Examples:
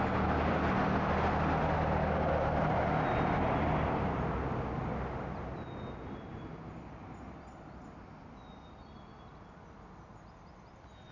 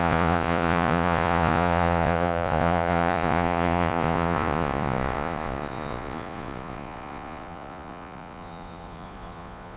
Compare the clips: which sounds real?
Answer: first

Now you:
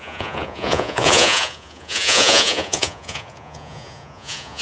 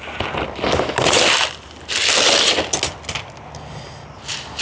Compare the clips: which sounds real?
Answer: second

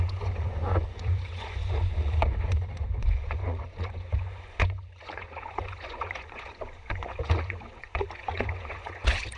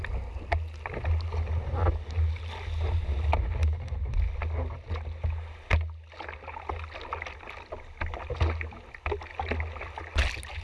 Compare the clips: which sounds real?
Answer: second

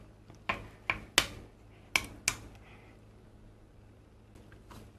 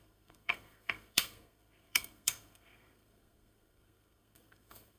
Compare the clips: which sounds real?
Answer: first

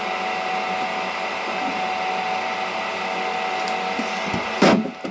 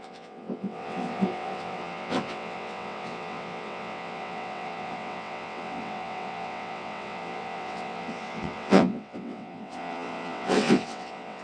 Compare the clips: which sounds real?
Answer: first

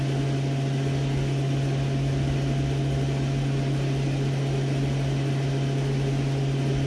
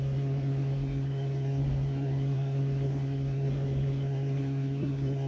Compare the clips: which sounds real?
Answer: first